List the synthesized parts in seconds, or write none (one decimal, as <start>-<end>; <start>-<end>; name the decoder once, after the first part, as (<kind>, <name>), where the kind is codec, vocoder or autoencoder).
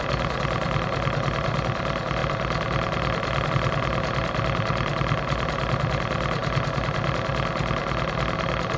none